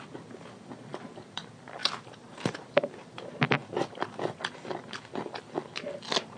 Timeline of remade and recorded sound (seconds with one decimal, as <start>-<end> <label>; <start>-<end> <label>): 0.0-0.9 recorded; 0.9-1.4 remade; 1.4-1.8 recorded; 1.8-3.2 remade; 3.2-6.4 recorded